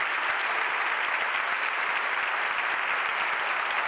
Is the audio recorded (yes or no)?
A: yes